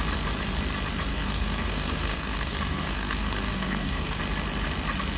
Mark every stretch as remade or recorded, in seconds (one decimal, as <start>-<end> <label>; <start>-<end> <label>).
0.0-1.1 recorded; 1.1-4.2 remade; 4.2-5.2 recorded